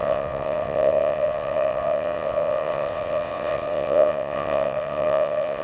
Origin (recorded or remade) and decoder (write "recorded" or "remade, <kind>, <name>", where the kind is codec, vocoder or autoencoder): remade, vocoder, WaveNeXt